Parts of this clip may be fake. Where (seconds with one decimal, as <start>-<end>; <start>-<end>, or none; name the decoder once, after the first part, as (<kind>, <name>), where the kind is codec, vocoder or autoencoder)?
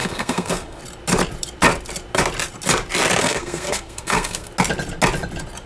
0.0-0.8 (codec, SNAC); 3.2-4.5